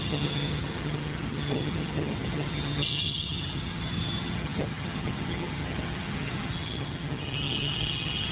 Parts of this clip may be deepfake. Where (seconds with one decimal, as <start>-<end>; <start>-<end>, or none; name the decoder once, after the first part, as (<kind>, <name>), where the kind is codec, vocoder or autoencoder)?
0.0-8.3 (vocoder, HiFi-GAN)